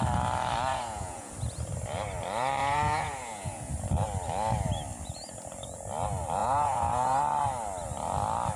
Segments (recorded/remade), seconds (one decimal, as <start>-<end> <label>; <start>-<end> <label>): 0.0-0.7 recorded; 0.7-1.3 remade; 1.3-2.6 recorded; 2.6-3.7 remade; 3.7-6.4 recorded; 6.4-7.2 remade; 7.2-8.6 recorded